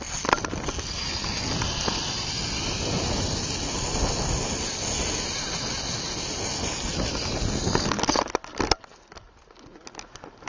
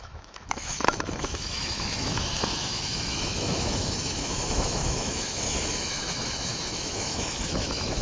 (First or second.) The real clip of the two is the first